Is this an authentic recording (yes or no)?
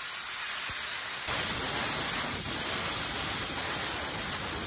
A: yes